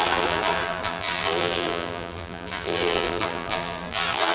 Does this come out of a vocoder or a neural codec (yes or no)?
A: yes